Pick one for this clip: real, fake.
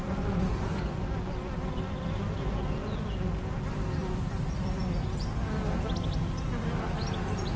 real